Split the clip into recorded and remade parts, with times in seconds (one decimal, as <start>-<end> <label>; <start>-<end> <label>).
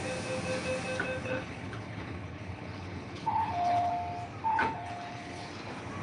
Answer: 0.0-1.2 recorded; 1.2-3.9 remade; 3.9-4.5 recorded; 4.5-5.5 remade; 5.5-6.0 recorded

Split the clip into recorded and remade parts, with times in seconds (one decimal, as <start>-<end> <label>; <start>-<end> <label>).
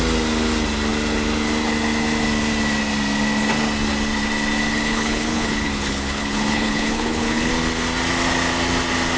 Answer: 0.0-4.7 recorded; 4.7-7.5 remade; 7.5-9.2 recorded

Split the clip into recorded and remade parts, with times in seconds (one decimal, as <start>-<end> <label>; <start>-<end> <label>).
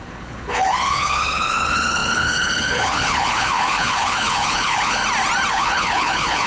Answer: 0.0-5.0 remade; 5.0-5.5 recorded; 5.5-6.5 remade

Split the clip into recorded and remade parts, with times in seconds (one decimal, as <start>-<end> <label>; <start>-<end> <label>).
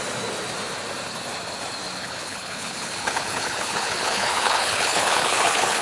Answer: 0.0-2.0 recorded; 2.0-5.8 remade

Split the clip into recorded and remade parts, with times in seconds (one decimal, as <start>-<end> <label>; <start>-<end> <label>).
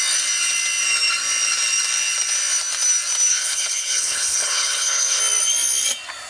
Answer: 0.0-3.3 recorded; 3.3-5.2 remade; 5.2-6.3 recorded